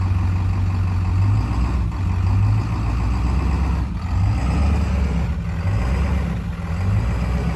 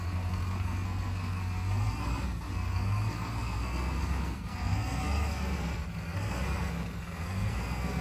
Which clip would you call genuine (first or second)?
first